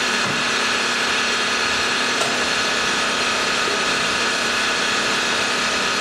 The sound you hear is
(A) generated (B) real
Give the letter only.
A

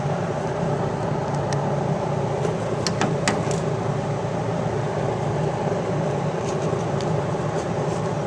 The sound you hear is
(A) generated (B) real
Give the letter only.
B